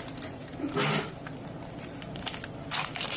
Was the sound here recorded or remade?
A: recorded